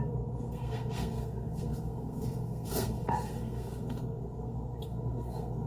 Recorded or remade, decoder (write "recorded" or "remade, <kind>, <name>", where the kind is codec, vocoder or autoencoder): remade, codec, SNAC